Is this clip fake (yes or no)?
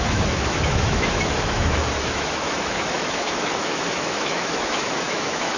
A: yes